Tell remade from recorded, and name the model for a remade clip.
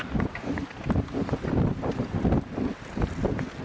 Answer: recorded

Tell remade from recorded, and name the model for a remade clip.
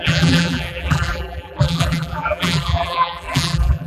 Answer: remade, vocoder, BigVGAN v2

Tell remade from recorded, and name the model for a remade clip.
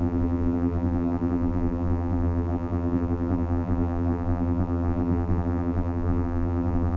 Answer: remade, vocoder, BigVGAN v2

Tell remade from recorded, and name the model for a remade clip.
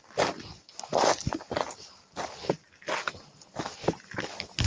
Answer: recorded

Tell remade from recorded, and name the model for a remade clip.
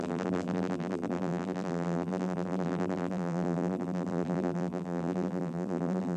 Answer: remade, vocoder, BigVGAN v2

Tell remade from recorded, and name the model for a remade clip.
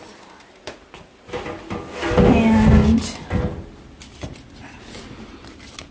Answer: recorded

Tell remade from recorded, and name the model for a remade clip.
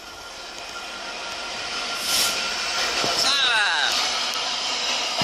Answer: remade, vocoder, BigVGAN v2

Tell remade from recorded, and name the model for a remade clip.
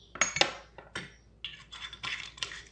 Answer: recorded